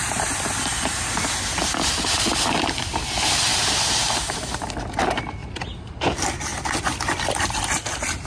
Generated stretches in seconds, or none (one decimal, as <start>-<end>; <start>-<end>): 3.5-4.7